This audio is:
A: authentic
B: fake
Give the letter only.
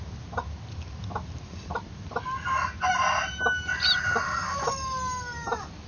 A